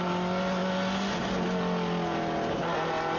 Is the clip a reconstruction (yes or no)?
no